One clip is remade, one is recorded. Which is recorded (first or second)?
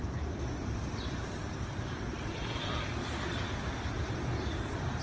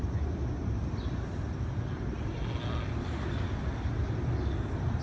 second